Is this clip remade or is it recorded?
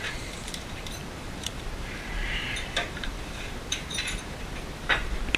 remade